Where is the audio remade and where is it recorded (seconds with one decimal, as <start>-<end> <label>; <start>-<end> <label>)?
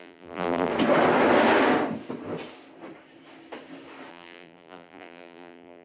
0.0-0.7 remade; 0.7-4.1 recorded; 4.1-5.8 remade